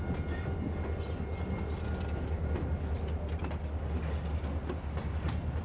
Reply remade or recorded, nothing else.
recorded